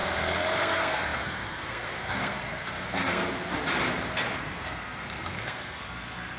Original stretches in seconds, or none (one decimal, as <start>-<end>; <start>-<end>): 0.0-0.6; 3.2-4.4